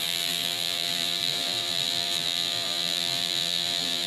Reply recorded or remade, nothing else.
remade